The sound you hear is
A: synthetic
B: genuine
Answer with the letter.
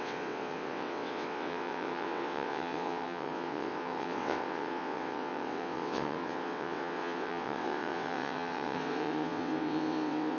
A